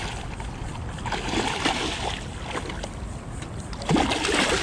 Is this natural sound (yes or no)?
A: yes